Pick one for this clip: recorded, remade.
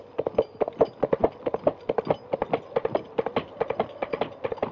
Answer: recorded